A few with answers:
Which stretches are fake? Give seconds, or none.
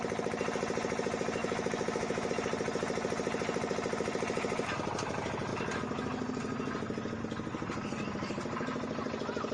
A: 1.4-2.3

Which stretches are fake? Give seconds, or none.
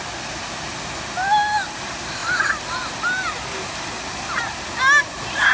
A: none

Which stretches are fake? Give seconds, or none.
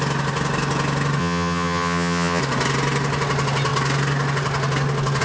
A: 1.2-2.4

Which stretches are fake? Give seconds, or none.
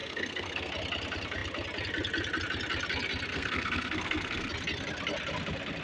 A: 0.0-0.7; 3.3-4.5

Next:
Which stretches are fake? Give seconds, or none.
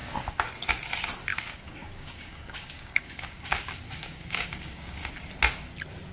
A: 0.0-0.5; 1.3-5.0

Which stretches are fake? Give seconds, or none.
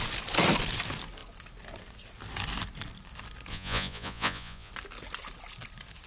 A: 3.5-4.7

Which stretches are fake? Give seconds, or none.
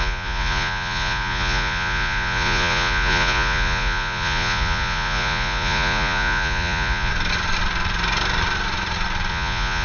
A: 0.0-7.1; 9.3-9.8